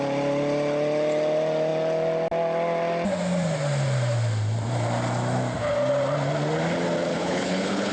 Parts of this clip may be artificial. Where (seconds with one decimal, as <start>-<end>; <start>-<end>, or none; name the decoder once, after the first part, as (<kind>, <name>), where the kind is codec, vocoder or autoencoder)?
7.1-7.9 (codec, HILCodec)